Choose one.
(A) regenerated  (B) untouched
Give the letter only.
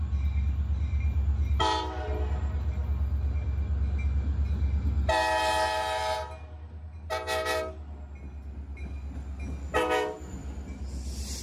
B